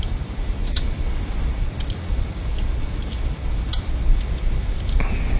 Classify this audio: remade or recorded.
recorded